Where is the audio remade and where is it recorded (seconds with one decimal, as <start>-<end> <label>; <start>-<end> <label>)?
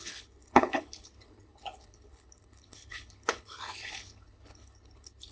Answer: 0.0-5.3 remade